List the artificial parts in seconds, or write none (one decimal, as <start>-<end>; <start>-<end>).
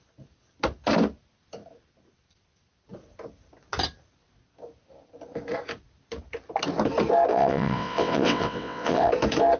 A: 7.3-9.1